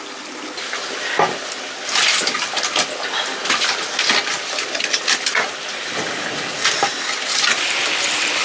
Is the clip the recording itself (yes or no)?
yes